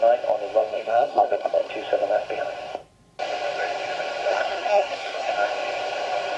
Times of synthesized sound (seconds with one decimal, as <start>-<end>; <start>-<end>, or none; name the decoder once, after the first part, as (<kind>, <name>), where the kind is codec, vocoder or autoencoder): 0.7-1.7 (codec, SNAC); 4.3-5.3